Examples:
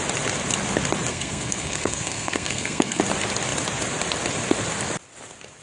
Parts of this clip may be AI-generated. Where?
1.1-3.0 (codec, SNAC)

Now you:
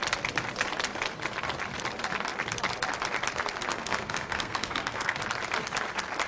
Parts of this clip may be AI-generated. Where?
3.7-5.2 (codec, SNAC)

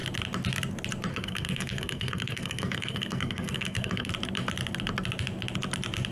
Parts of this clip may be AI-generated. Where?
1.1-4.1 (codec, SNAC)

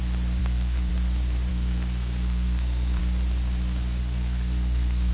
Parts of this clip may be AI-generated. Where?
0.4-0.9 (codec, SNAC); 1.5-3.0; 4.0-5.1

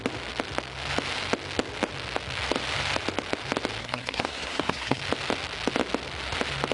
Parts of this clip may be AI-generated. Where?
3.8-5.0 (codec, SNAC)

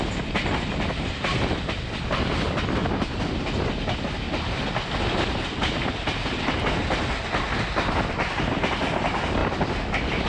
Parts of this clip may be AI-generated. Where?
none

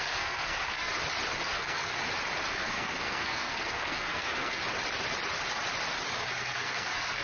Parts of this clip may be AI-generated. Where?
0.0-0.9 (codec, SNAC); 1.4-1.9; 2.5-4.6; 6.2-7.2